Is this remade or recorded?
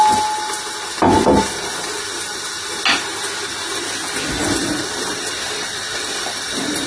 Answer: recorded